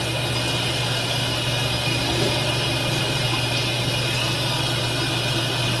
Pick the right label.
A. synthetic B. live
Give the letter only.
B